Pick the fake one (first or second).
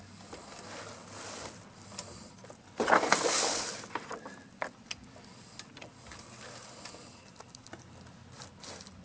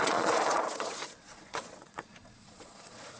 second